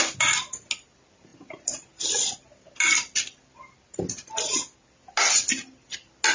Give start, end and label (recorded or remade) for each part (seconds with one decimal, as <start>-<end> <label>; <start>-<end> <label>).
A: 0.0-6.3 recorded